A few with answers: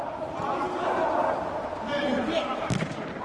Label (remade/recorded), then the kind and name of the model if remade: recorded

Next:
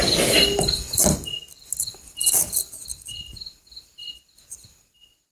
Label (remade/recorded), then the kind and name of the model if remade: recorded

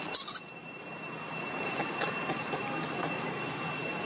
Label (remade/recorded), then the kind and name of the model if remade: recorded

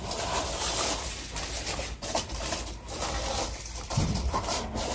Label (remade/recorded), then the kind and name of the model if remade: recorded